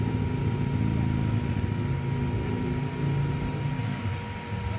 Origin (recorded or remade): recorded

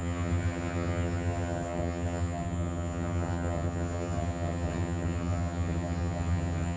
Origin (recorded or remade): remade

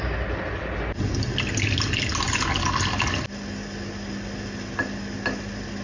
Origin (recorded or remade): recorded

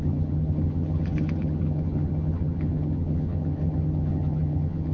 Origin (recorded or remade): remade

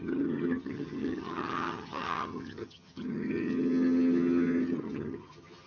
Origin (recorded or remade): remade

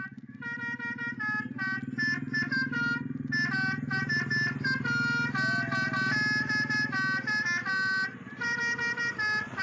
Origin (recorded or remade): recorded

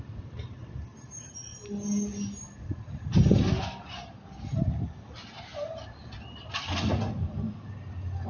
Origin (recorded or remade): recorded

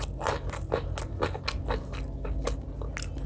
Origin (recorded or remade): recorded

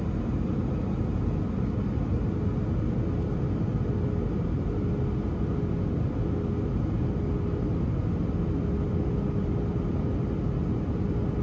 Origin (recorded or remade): recorded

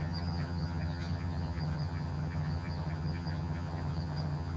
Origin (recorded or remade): remade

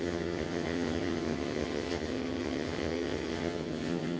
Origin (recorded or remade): remade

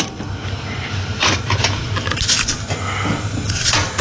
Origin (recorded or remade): recorded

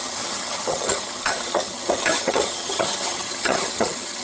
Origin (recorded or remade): remade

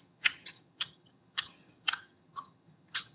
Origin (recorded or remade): remade